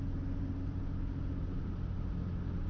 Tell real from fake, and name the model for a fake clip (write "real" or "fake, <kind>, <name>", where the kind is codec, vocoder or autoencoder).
real